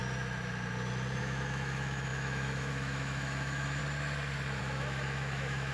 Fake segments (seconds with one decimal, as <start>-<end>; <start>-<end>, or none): 1.2-3.8; 4.6-5.7